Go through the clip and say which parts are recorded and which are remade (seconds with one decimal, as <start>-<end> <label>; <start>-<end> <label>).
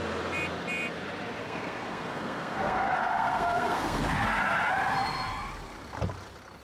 0.0-1.4 recorded; 1.4-4.0 remade; 4.0-6.6 recorded